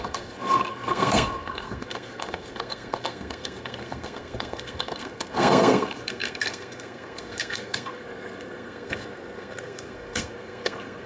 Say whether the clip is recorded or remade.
remade